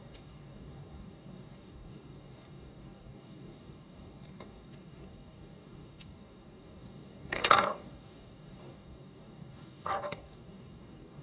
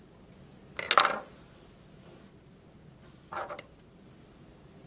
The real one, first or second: second